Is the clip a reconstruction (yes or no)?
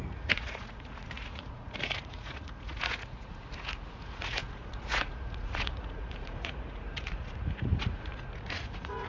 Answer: yes